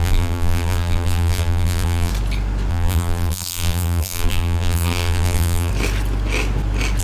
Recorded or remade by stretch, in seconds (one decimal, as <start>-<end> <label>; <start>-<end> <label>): 0.0-2.1 remade; 2.1-2.7 recorded; 2.7-5.7 remade; 5.7-7.0 recorded